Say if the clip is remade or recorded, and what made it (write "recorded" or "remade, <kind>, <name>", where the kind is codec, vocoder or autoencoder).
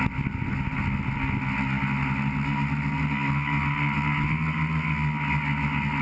recorded